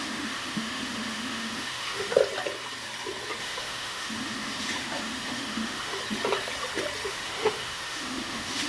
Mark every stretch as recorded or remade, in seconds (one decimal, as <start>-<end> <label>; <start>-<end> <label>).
0.0-2.2 remade; 2.2-3.4 recorded; 3.4-6.0 remade; 6.0-7.1 recorded; 7.1-8.7 remade